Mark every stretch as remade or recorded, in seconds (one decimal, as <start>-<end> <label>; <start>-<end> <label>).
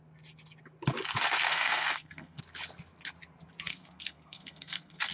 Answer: 0.0-1.5 recorded; 1.5-2.4 remade; 2.4-3.7 recorded; 3.7-5.1 remade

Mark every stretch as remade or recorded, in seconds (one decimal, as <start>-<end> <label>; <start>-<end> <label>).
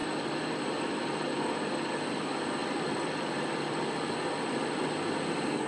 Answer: 0.0-1.9 remade; 1.9-2.6 recorded; 2.6-3.8 remade; 3.8-5.7 recorded